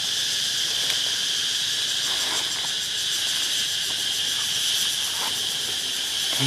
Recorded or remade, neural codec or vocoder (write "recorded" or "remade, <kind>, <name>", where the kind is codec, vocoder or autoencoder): recorded